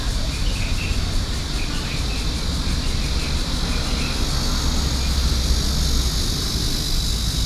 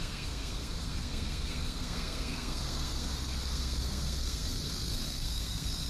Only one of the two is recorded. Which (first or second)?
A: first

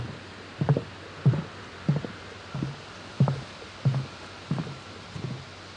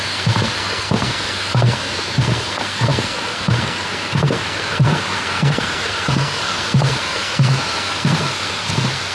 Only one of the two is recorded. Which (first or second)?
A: first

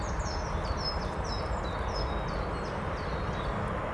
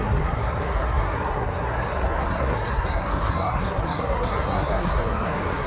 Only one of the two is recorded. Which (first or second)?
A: first